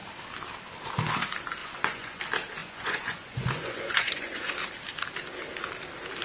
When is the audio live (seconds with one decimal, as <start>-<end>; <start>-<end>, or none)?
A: 0.0-1.6; 2.2-2.6; 4.5-6.2